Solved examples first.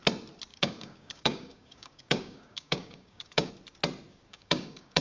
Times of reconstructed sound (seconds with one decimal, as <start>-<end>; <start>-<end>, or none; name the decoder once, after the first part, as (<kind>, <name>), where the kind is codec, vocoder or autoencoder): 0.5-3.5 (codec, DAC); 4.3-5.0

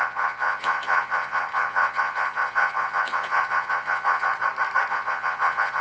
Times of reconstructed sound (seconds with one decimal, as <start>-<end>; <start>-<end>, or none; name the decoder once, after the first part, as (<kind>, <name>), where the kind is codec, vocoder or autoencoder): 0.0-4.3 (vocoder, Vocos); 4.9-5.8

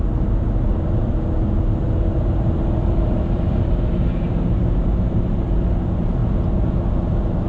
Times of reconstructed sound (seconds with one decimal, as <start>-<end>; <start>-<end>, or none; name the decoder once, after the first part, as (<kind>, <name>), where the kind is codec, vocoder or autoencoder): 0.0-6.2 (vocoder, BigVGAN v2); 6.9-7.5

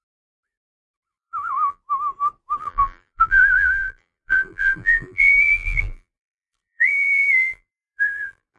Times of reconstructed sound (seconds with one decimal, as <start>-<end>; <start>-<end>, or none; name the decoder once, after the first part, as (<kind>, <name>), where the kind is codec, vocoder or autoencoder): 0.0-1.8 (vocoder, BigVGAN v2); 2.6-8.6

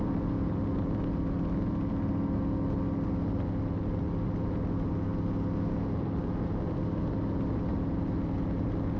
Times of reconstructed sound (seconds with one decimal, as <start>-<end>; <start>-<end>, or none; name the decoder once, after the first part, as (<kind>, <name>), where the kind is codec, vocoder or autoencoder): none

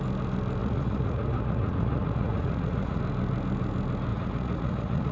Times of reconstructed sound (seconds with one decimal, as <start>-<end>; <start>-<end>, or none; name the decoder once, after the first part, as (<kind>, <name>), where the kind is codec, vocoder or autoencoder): 0.6-3.0 (vocoder, Vocos); 4.1-5.1

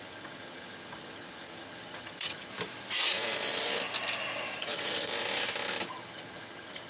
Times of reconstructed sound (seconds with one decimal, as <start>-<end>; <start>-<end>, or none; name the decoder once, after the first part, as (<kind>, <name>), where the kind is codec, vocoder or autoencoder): 0.0-2.5 (vocoder, HiFi-GAN); 4.6-5.1; 5.9-6.9